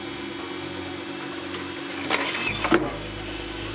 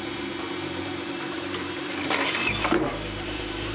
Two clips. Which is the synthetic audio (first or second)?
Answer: second